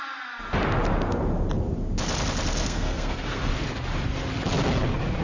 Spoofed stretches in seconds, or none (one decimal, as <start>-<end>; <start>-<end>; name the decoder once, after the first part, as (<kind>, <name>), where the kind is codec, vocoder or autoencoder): 2.6-3.5 (codec, SNAC)